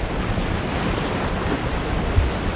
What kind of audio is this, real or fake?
real